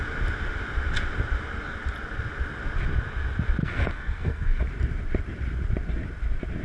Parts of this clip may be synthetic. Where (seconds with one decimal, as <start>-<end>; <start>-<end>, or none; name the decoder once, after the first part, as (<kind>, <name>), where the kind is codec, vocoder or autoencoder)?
3.6-4.6 (codec, SNAC)